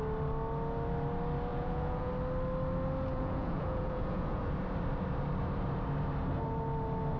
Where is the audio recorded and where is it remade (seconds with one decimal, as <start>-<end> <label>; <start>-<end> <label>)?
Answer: 0.0-1.5 recorded; 1.5-2.1 remade; 2.1-3.1 recorded; 3.1-4.5 remade; 4.5-7.2 recorded